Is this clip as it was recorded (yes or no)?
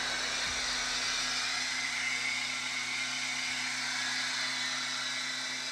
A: yes